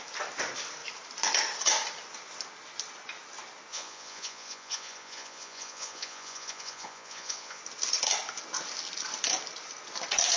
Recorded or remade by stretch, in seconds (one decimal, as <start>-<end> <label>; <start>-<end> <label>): 0.0-3.7 recorded; 3.7-7.6 remade; 7.6-10.4 recorded